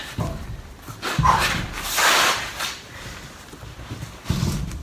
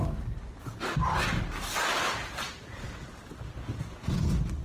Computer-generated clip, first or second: first